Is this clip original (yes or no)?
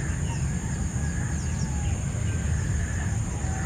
yes